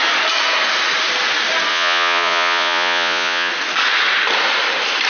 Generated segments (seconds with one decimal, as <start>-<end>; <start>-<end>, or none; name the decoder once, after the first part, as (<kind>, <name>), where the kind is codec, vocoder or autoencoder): 1.7-3.5 (vocoder, Vocos)